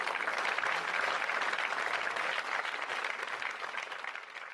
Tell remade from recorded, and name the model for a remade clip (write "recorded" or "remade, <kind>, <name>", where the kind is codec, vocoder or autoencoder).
recorded